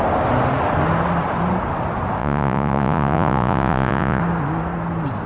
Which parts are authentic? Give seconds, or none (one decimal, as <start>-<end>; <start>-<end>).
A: 0.0-2.2; 4.2-5.3